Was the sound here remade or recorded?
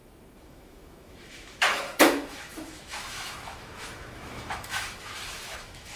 remade